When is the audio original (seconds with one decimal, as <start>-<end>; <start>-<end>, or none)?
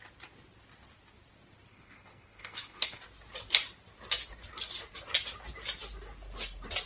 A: 0.0-1.7; 3.0-6.9